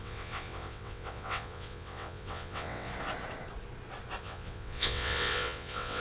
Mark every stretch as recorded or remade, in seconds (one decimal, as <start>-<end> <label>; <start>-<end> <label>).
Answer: 0.0-2.9 remade; 2.9-4.2 recorded; 4.2-6.0 remade